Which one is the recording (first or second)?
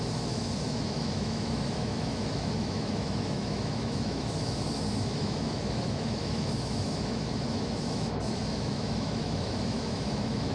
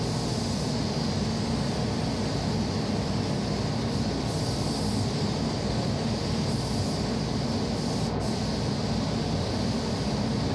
second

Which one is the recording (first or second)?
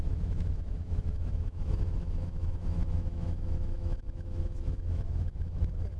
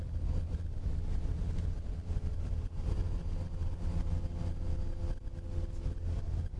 second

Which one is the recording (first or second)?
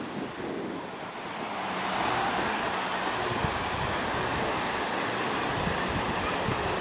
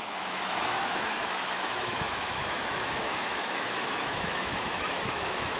first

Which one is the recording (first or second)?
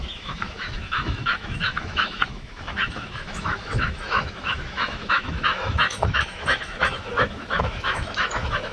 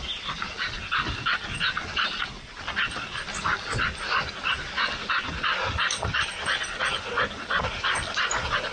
second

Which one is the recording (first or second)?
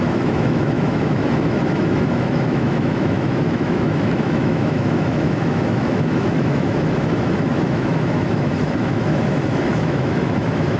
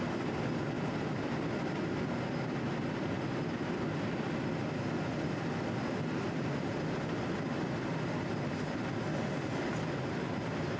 second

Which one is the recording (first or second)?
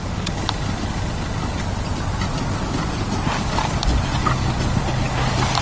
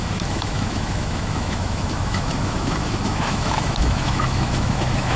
first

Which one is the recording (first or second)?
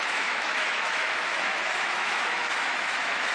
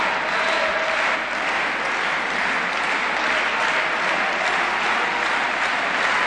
second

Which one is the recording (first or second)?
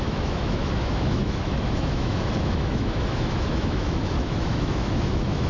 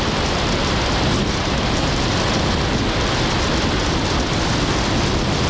second